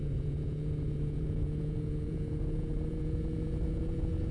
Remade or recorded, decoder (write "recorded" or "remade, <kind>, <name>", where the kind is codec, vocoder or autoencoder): remade, vocoder, Vocos